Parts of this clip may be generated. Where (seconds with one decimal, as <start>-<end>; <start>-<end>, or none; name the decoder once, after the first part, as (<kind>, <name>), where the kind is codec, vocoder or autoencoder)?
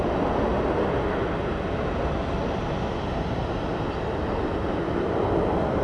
none